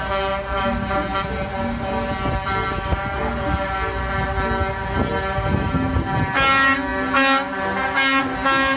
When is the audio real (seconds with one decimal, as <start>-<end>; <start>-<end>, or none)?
0.0-8.8